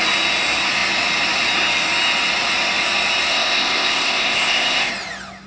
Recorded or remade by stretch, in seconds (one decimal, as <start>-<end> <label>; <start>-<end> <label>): 0.0-3.3 recorded; 3.3-4.9 remade; 4.9-5.5 recorded